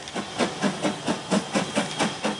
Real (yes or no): yes